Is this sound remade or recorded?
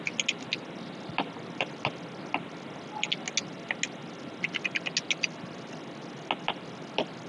recorded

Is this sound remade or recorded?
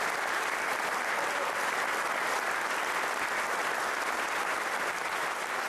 recorded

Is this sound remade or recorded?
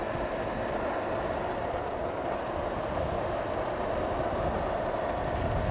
recorded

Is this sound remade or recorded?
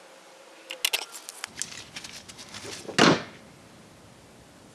recorded